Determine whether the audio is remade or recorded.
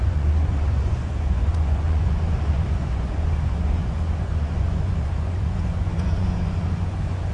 remade